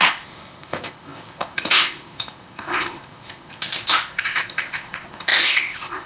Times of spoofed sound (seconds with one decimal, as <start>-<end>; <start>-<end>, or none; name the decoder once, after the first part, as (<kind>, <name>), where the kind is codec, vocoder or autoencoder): 0.0-6.1 (codec, ZipCodec)